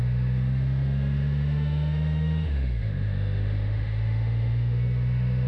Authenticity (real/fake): fake